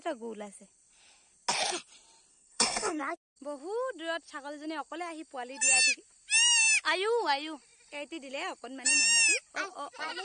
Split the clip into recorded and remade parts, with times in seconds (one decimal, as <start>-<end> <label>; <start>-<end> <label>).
0.0-2.3 recorded; 2.3-3.0 remade; 3.0-10.2 recorded